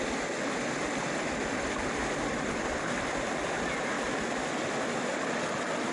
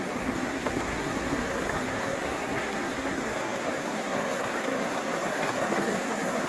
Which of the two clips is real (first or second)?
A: first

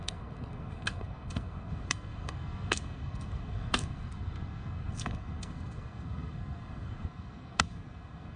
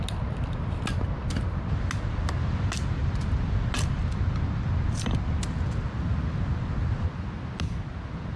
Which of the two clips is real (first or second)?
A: second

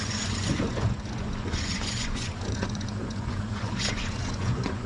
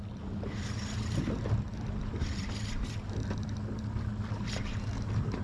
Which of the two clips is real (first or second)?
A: second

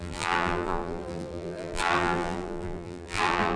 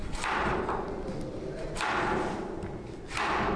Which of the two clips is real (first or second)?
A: second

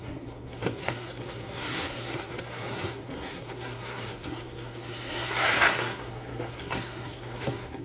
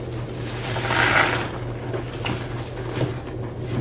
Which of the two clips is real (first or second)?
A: second